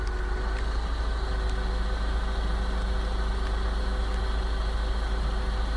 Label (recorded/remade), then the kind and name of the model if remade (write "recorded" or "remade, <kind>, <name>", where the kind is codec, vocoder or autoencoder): recorded